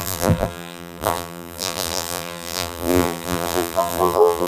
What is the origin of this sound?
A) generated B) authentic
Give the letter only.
A